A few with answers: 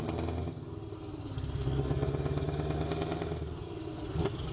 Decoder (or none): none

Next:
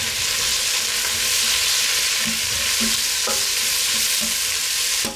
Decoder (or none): none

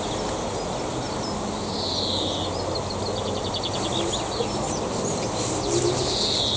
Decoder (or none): none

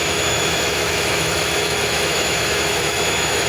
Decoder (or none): autoencoder, DAC-VAE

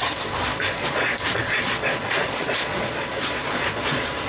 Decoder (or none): vocoder, Vocos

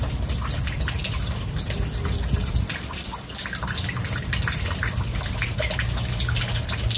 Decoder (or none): none